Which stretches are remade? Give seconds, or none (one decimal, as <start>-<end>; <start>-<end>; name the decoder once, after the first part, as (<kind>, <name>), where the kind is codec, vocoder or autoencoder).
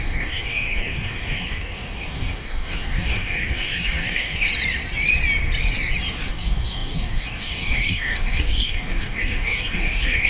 0.0-4.5 (codec, DAC); 6.3-10.3